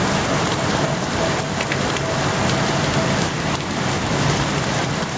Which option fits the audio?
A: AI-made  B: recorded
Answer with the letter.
B